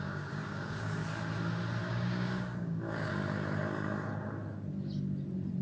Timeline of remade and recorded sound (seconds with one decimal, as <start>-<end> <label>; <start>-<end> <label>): 0.0-1.0 remade; 1.0-1.8 recorded; 1.8-3.1 remade; 3.1-5.6 recorded